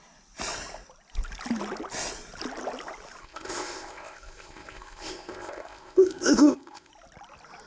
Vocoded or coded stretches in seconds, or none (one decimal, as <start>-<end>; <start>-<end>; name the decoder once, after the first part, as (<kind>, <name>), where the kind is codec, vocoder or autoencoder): 3.2-6.9 (codec, ZipCodec)